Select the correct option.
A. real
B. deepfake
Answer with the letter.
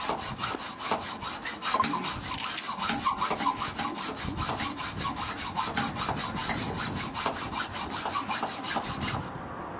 B